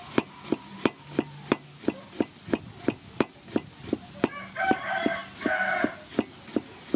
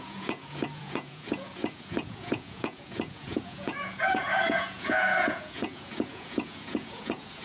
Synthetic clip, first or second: second